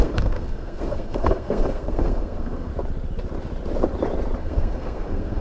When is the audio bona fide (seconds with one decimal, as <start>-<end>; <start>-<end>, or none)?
2.7-4.4